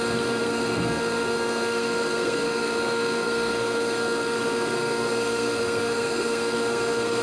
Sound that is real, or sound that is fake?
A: fake